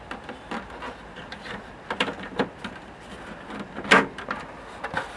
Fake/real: real